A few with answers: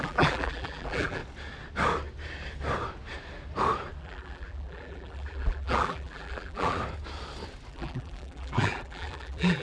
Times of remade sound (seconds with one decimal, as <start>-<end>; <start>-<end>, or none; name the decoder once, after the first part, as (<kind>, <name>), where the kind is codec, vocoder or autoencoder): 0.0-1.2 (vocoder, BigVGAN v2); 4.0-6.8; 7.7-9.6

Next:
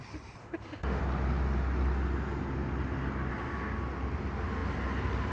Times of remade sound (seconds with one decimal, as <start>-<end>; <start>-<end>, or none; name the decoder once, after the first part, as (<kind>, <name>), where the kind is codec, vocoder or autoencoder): 0.4-1.0 (autoencoder, DAC-VAE)

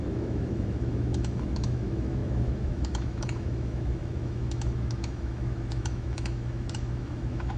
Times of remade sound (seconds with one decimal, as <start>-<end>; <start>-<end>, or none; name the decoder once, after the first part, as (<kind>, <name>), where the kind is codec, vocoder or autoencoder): 0.0-7.6 (autoencoder, DAC-VAE)